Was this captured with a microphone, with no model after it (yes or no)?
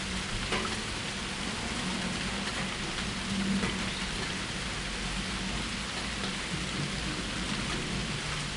yes